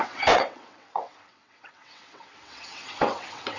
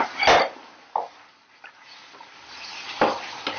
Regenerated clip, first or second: first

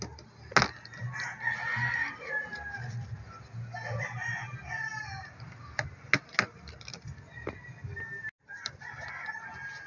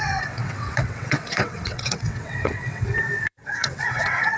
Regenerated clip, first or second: second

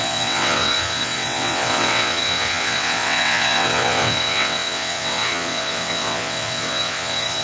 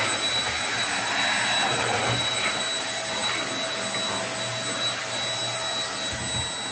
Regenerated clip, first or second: first